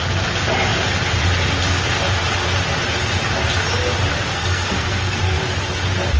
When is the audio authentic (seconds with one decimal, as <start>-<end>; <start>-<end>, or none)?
0.0-4.3; 5.4-6.2